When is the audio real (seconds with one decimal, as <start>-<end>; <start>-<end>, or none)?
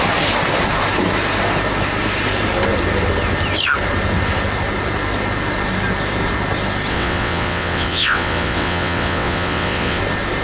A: 0.0-6.9; 10.0-10.4